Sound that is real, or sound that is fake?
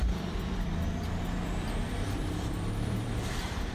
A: fake